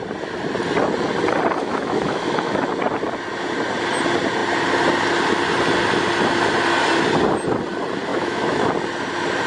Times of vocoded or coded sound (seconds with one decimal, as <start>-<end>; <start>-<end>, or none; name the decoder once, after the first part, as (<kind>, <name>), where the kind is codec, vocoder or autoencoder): 1.6-2.7 (autoencoder, DAC-VAE); 8.1-8.7